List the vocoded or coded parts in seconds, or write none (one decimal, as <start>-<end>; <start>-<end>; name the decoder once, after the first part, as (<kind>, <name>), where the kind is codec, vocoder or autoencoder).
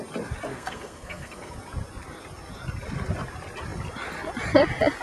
0.5-1.5 (codec, SNAC)